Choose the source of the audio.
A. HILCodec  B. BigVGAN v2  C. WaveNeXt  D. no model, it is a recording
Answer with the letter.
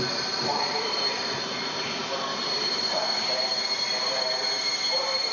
B